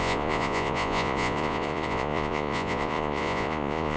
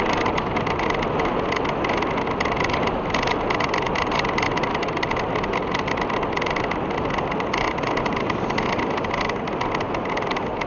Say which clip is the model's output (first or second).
first